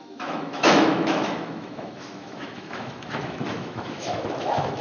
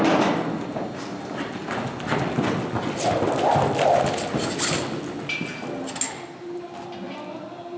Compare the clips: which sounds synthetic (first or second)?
first